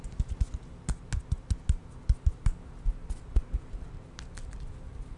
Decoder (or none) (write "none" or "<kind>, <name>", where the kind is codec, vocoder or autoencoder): none